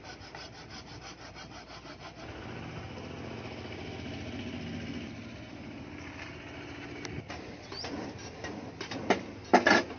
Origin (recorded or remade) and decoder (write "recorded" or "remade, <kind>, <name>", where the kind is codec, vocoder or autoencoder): recorded